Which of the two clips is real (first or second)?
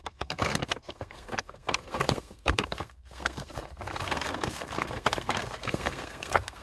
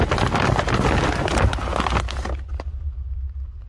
second